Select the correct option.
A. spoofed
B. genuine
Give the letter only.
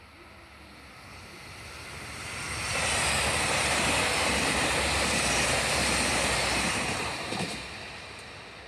B